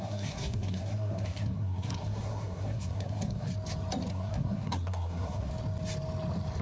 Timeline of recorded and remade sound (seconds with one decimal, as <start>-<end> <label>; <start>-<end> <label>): 0.0-3.5 remade; 3.5-4.1 recorded; 4.1-5.5 remade; 5.5-6.6 recorded